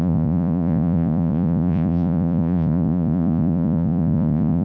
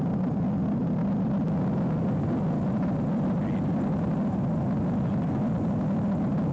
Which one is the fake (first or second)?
first